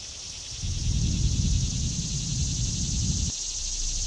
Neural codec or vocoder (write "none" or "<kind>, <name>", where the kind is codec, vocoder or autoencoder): none